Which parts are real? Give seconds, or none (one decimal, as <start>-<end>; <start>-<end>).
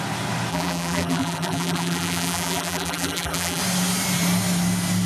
0.0-0.5; 3.6-5.1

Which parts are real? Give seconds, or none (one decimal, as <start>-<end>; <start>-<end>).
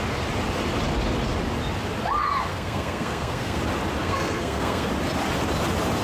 0.0-2.5; 3.6-4.0; 4.9-6.0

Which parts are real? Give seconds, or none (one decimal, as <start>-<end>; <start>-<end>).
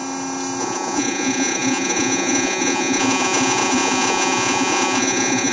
0.0-0.6